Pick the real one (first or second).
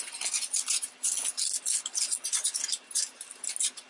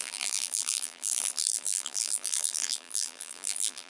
first